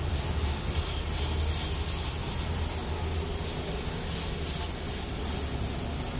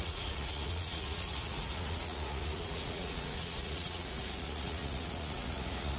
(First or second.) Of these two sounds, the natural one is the first